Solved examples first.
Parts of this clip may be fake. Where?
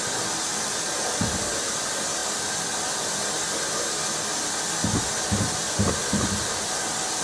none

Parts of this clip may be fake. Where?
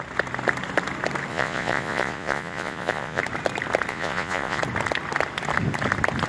1.3-3.2 (vocoder, Vocos); 3.9-4.6